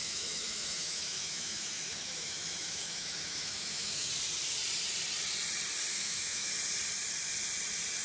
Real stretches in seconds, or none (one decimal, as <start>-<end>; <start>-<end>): 4.1-5.9; 6.5-8.0